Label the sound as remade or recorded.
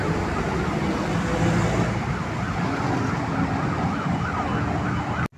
recorded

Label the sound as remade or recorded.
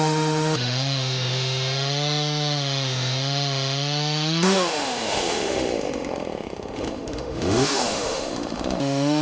remade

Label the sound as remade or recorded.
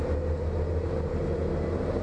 recorded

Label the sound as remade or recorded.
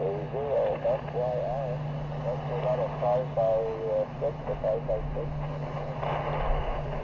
recorded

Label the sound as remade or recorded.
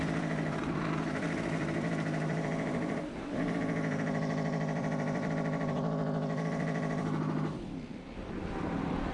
remade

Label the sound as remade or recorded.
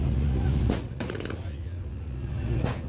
remade